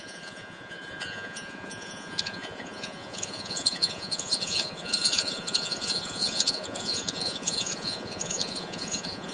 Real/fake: fake